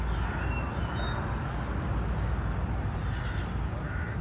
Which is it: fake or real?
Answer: real